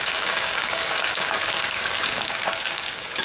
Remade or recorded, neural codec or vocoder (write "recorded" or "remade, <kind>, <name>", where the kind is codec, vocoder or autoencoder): remade, codec, DAC